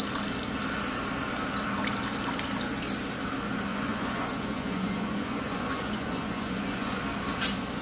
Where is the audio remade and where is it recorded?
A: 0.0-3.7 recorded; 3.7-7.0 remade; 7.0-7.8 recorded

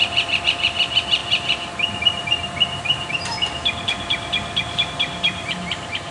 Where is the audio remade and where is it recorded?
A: 0.0-6.1 remade

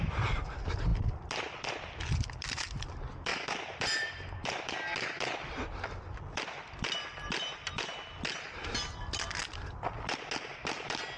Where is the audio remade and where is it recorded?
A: 0.0-3.3 recorded; 3.3-4.7 remade; 4.7-11.2 recorded

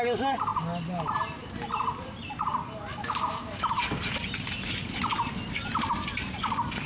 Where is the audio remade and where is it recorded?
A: 0.0-3.0 recorded; 3.0-3.7 remade; 3.7-6.9 recorded

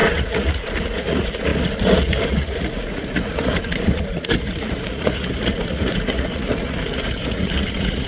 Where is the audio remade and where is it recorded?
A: 0.0-8.1 remade

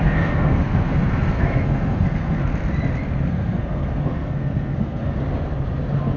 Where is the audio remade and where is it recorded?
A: 0.0-2.4 remade; 2.4-3.3 recorded; 3.3-5.0 remade; 5.0-6.2 recorded

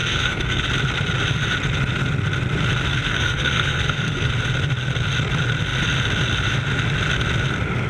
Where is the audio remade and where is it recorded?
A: 0.0-0.6 remade; 0.6-2.9 recorded; 2.9-4.3 remade; 4.3-7.9 recorded